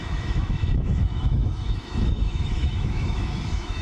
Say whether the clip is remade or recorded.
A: remade